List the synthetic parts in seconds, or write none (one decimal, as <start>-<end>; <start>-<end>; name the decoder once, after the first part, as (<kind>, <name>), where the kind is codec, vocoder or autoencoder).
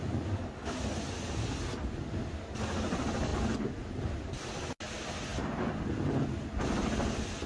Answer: none